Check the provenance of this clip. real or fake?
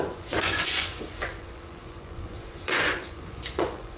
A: fake